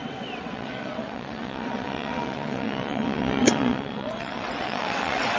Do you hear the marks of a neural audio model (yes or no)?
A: yes